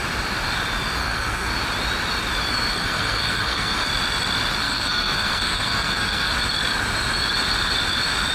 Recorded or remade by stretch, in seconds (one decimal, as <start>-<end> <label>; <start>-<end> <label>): 0.0-1.0 recorded; 1.0-1.5 remade; 1.5-2.7 recorded; 2.7-3.9 remade; 3.9-4.6 recorded; 4.6-6.3 remade; 6.3-8.3 recorded